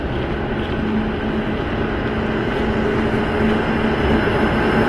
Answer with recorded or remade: recorded